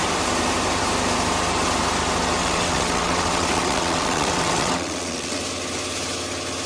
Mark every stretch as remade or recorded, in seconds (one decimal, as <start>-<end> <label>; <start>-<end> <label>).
0.0-2.4 recorded; 2.4-5.4 remade; 5.4-6.7 recorded